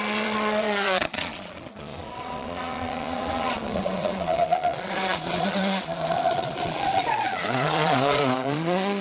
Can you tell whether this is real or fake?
fake